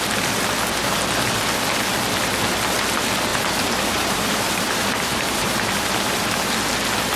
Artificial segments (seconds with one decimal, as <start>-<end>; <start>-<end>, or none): 3.3-6.5